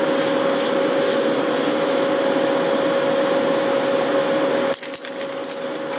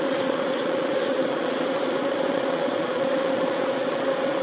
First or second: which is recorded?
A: first